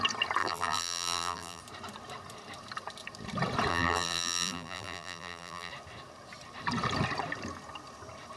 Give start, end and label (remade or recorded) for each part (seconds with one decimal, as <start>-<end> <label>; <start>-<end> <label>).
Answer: 0.0-0.4 recorded; 0.4-1.6 remade; 1.6-3.7 recorded; 3.7-5.7 remade; 5.7-8.4 recorded